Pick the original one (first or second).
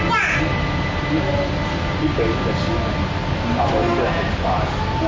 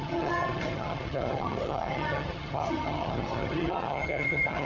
first